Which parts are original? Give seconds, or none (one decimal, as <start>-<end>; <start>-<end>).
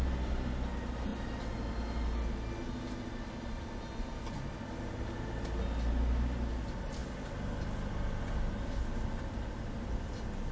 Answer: 0.0-10.5